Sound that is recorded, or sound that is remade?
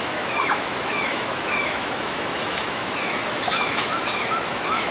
remade